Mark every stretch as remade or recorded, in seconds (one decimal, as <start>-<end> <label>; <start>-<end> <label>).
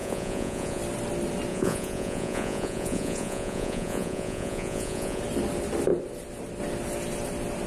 0.0-0.8 remade; 0.8-1.5 recorded; 1.5-5.2 remade; 5.2-7.7 recorded